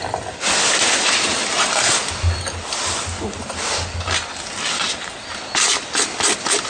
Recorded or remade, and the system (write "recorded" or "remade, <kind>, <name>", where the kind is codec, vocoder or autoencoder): recorded